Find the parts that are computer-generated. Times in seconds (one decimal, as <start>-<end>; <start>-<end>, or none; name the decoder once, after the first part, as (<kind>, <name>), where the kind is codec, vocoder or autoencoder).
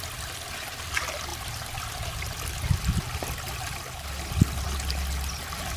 1.3-1.8 (vocoder, BigVGAN v2)